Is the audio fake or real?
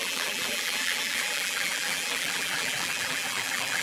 fake